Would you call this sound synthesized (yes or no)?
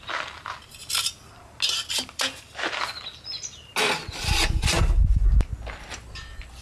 no